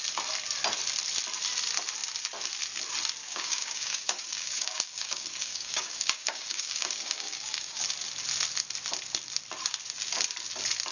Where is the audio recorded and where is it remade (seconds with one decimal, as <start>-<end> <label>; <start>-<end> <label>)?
0.0-3.2 recorded; 3.2-7.8 remade; 7.8-10.9 recorded